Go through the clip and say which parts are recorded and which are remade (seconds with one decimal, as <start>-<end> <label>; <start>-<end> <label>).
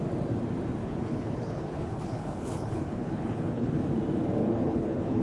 0.0-0.8 recorded; 0.8-3.9 remade; 3.9-4.4 recorded; 4.4-5.2 remade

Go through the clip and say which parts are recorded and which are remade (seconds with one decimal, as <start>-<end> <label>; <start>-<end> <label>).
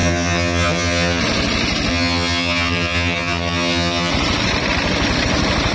0.0-1.2 remade; 1.2-1.9 recorded; 1.9-4.1 remade; 4.1-5.7 recorded